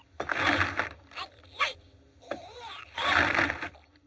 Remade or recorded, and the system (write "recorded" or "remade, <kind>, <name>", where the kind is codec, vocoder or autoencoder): recorded